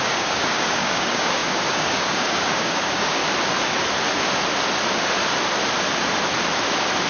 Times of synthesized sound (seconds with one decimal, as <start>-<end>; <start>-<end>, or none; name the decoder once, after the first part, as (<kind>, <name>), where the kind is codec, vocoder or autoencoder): 0.0-3.2 (codec, DAC)